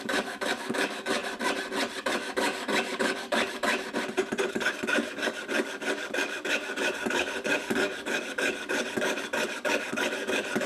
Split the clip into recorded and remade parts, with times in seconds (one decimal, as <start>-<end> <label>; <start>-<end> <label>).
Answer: 0.0-1.2 remade; 1.2-2.1 recorded; 2.1-3.7 remade; 3.7-4.5 recorded; 4.5-10.7 remade